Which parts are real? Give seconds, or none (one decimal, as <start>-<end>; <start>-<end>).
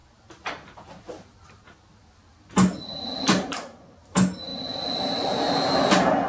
0.0-6.3